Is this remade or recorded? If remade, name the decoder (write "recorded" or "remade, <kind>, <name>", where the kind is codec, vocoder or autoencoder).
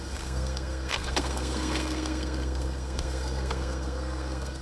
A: remade, codec, SNAC